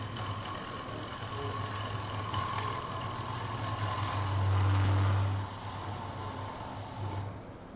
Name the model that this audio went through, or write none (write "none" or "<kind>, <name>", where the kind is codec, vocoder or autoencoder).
none